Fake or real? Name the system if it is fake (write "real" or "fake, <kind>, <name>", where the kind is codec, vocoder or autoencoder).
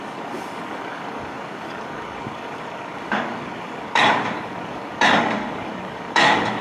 fake, codec, DAC